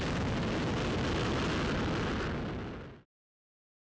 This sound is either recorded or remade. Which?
recorded